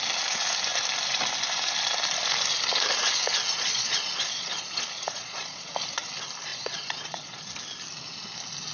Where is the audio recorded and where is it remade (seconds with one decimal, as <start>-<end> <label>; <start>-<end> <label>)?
0.0-3.5 recorded; 3.5-5.7 remade; 5.7-6.5 recorded; 6.5-7.5 remade; 7.5-8.7 recorded